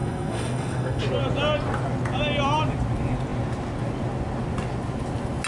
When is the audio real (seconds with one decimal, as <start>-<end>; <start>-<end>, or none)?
1.0-5.5